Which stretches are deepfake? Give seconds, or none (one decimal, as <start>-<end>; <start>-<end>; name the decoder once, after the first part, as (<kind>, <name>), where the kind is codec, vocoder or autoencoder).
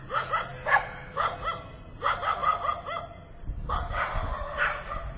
none